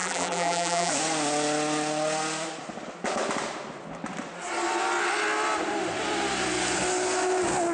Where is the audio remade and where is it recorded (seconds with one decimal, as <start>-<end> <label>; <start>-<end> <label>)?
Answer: 0.0-0.9 remade; 0.9-7.7 recorded